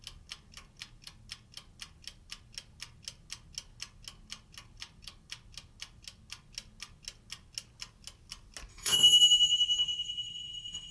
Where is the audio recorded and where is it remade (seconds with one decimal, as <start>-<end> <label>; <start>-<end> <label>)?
0.0-8.7 recorded; 8.7-10.9 remade